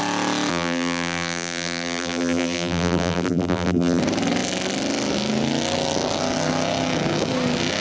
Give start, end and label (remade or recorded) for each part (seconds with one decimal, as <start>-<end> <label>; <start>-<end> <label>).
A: 0.0-0.5 recorded; 0.5-4.0 remade; 4.0-7.8 recorded